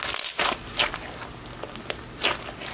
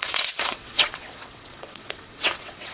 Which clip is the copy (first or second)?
second